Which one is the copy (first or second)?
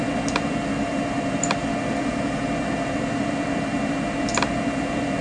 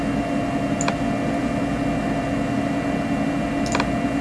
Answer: first